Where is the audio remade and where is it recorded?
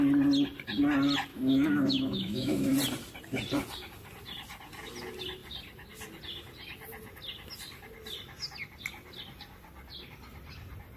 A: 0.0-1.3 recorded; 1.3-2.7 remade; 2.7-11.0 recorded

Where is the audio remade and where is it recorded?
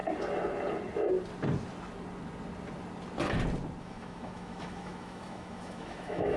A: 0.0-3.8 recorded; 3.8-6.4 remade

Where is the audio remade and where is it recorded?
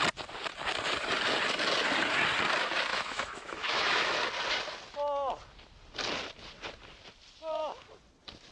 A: 0.0-2.9 recorded; 2.9-4.2 remade; 4.2-8.5 recorded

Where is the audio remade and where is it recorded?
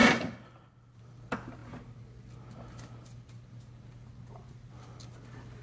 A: 0.0-5.6 recorded